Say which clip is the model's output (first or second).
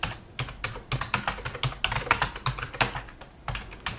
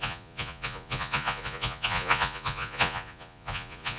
second